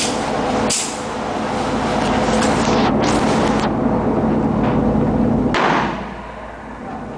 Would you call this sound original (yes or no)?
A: yes